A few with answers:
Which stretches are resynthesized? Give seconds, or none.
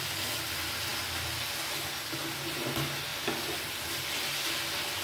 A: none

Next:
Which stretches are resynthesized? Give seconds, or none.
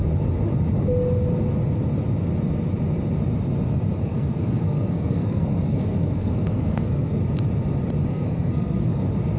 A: 4.0-7.2 (codec, SNAC); 8.1-8.9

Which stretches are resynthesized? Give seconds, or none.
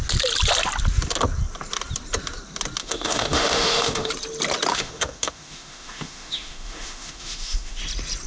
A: 2.8-4.1 (autoencoder, DAC-VAE); 4.7-7.8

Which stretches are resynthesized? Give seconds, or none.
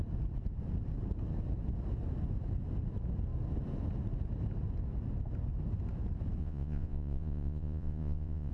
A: 6.4-8.5 (vocoder, Vocos)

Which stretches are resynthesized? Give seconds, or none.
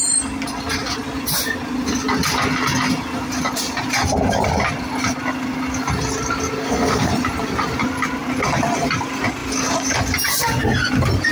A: 6.6-7.1 (codec, SNAC)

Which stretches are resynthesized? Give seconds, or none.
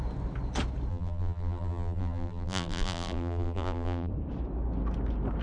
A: 0.9-4.1 (vocoder, BigVGAN v2)